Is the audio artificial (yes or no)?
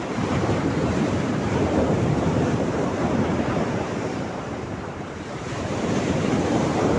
yes